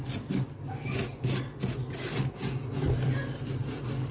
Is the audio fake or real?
real